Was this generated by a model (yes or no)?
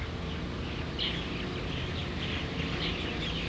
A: no